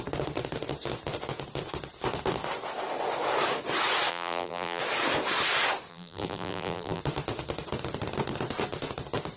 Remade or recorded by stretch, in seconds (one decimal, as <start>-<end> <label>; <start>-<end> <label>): 0.0-4.1 recorded; 4.1-4.8 remade; 4.8-5.9 recorded; 5.9-7.0 remade; 7.0-9.4 recorded